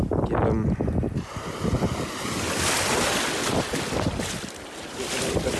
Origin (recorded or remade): recorded